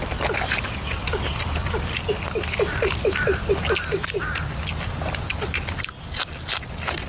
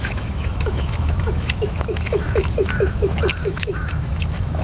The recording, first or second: first